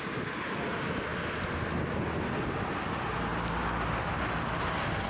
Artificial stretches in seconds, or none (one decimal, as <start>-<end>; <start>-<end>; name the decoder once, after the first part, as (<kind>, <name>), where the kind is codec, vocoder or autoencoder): none